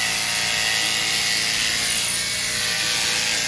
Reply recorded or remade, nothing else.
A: recorded